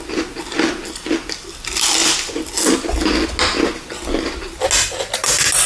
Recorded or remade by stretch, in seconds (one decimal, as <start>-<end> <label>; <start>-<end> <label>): 0.0-5.7 recorded